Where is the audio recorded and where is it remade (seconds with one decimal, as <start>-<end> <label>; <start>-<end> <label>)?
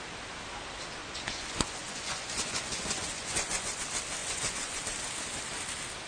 0.0-1.0 recorded; 1.0-3.8 remade; 3.8-4.2 recorded; 4.2-4.8 remade; 4.8-6.1 recorded